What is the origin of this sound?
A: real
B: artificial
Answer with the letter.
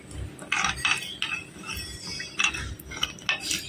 A